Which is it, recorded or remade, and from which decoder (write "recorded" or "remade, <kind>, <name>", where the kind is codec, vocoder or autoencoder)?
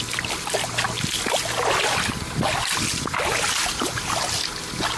recorded